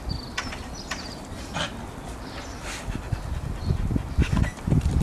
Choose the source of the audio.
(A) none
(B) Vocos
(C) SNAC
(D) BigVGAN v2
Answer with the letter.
A